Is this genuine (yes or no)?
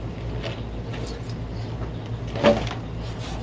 yes